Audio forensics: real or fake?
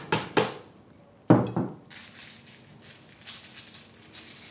real